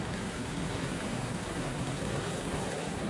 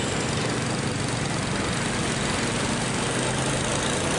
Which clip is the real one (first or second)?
second